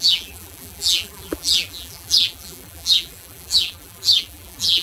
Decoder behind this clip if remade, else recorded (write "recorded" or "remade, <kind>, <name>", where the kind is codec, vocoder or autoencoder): remade, vocoder, BigVGAN v2